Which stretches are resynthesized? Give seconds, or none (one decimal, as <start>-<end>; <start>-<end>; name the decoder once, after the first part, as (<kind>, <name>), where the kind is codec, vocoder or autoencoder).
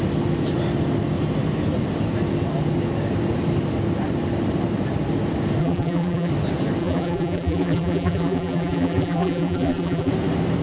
5.6-6.3 (vocoder, BigVGAN v2); 6.8-10.1